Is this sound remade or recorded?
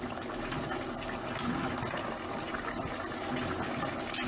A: recorded